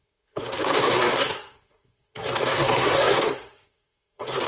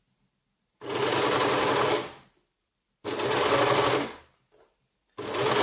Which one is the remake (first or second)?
first